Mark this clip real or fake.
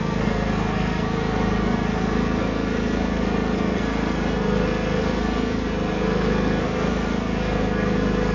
fake